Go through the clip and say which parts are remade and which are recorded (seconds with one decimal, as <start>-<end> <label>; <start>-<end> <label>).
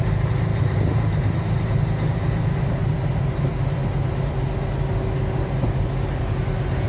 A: 0.0-2.8 remade; 2.8-6.5 recorded; 6.5-6.9 remade